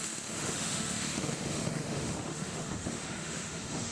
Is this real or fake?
fake